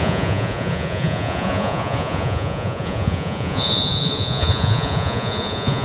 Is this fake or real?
fake